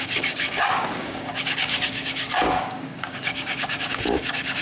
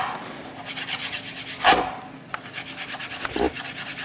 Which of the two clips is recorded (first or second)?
second